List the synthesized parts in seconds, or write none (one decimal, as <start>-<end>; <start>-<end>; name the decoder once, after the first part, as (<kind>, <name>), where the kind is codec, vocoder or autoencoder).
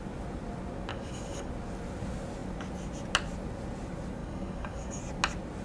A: 0.9-1.5 (codec, DAC); 4.2-5.0